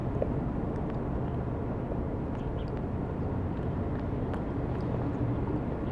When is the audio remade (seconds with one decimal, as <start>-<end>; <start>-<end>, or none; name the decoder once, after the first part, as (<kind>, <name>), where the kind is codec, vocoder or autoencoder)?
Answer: none